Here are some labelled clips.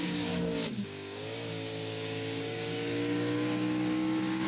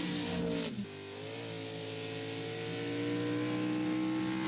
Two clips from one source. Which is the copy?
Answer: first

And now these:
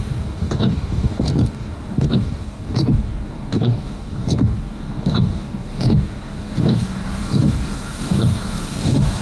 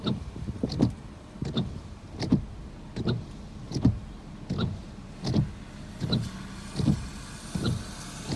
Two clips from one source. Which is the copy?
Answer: first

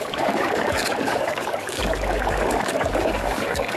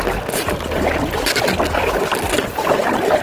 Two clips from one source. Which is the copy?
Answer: first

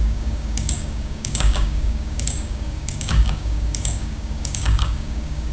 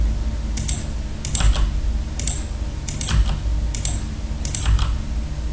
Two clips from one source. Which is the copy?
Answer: first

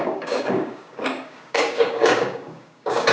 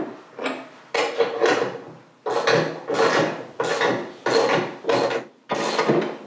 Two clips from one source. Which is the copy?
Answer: first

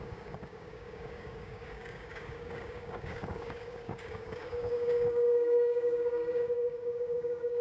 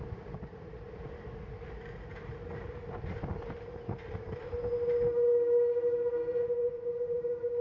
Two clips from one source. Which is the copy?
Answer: first